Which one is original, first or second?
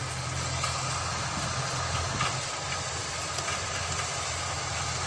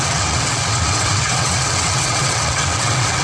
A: first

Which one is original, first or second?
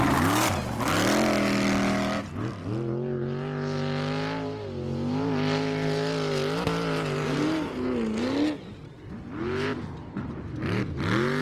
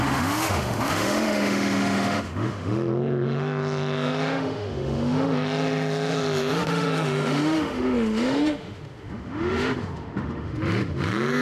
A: first